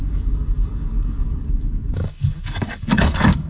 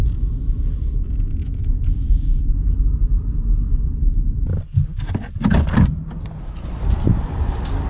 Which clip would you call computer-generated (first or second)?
first